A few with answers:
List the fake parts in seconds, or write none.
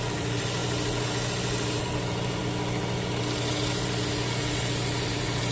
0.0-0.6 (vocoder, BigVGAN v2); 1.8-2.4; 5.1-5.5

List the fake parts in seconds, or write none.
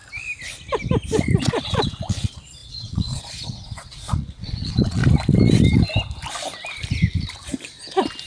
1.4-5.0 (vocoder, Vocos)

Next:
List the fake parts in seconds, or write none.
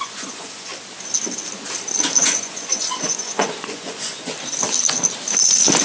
0.0-0.7 (vocoder, Vocos); 2.2-4.3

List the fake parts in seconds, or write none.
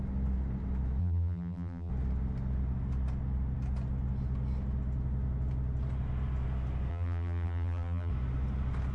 1.0-1.9 (vocoder, BigVGAN v2); 6.9-8.1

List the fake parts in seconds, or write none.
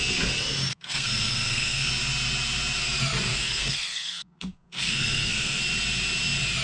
0.7-1.9 (codec, SNAC); 3.3-5.6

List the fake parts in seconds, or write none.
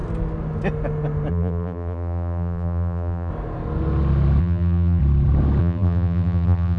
1.3-3.3 (vocoder, BigVGAN v2); 4.4-5.0; 5.6-6.8